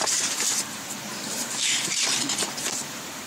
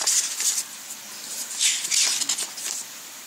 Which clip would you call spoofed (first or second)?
first